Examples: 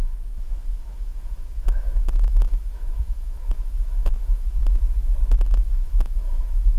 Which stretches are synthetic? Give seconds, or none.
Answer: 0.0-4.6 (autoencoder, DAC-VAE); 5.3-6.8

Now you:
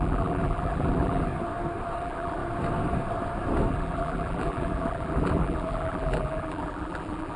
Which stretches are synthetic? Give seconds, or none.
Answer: 0.0-1.3 (vocoder, BigVGAN v2); 2.0-2.4; 3.7-7.4